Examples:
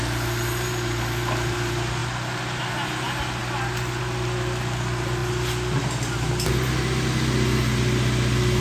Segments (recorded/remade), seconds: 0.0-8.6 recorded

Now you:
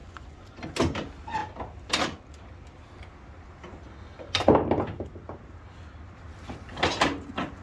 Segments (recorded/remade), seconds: 0.0-0.6 remade; 0.6-7.6 recorded

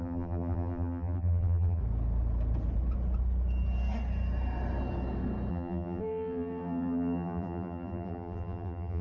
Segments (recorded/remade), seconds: 0.0-1.8 remade; 1.8-5.5 recorded; 5.5-9.0 remade